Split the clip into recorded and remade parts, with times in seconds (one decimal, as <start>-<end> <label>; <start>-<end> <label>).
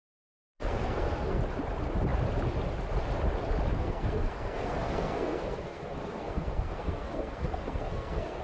0.0-1.4 remade; 1.4-3.7 recorded; 3.7-8.4 remade